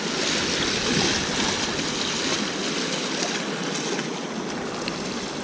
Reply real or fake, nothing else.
real